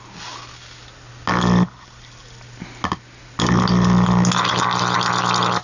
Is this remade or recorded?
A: recorded